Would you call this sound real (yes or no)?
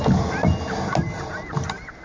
yes